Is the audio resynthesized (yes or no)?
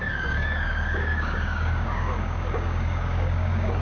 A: yes